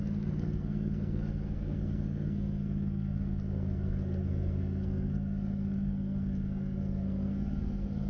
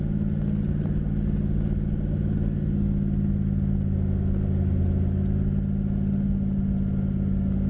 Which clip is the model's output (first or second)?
first